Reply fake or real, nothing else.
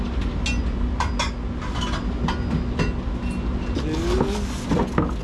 real